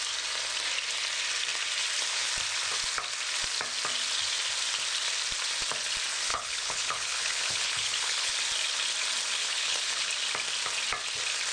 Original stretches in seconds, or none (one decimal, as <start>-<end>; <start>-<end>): 0.0-6.3; 8.3-9.4; 10.1-11.5